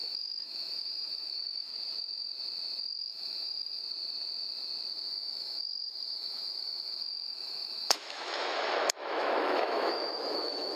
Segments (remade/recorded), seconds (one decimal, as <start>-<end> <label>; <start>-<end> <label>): 0.0-1.7 remade; 1.7-3.0 recorded; 3.0-3.8 remade; 3.8-5.1 recorded; 5.1-10.8 remade